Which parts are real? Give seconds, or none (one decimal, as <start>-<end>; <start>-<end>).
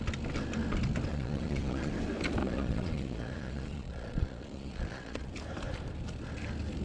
0.0-1.1; 1.9-2.4; 5.3-6.8